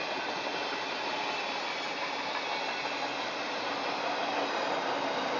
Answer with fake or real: real